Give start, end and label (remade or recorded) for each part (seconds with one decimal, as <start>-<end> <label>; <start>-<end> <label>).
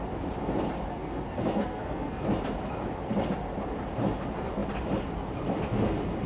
0.0-0.9 recorded; 0.9-2.2 remade; 2.2-6.3 recorded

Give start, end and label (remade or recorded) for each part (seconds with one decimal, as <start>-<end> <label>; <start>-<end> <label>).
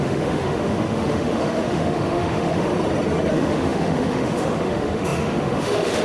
0.0-2.7 remade; 2.7-3.3 recorded; 3.3-6.0 remade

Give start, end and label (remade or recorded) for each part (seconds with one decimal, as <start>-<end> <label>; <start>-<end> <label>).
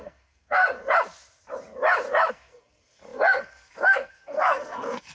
0.0-0.6 remade; 0.6-2.3 recorded; 2.3-5.1 remade